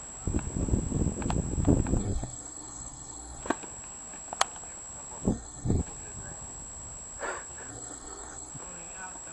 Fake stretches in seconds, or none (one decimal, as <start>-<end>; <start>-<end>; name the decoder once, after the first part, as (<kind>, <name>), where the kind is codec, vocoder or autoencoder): 2.0-3.4 (codec, SNAC); 5.3-5.8; 7.7-8.5